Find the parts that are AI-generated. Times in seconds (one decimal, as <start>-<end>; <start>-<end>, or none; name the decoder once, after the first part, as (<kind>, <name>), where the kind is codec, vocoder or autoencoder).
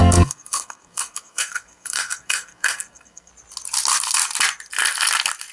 0.0-3.3 (codec, SNAC)